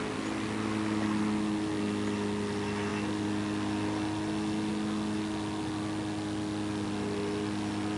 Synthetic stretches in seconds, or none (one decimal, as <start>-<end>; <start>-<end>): none